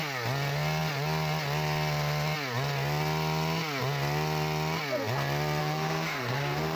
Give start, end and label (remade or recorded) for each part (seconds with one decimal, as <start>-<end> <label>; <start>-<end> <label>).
0.0-5.6 recorded; 5.6-6.8 remade